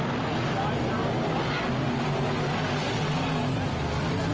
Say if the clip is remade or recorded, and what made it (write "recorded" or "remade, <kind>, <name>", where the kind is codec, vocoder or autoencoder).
recorded